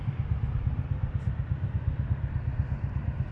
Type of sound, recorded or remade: recorded